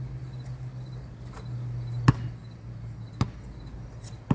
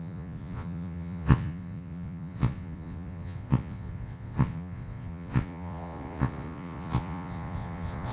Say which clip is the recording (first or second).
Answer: first